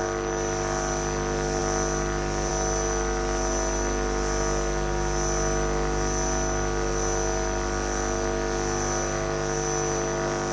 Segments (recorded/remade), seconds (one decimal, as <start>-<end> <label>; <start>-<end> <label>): 0.0-10.5 recorded